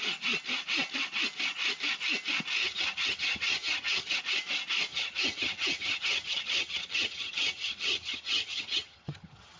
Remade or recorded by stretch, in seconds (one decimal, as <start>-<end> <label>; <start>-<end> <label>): 0.0-2.6 recorded; 2.6-4.2 remade; 4.2-4.9 recorded; 4.9-9.6 remade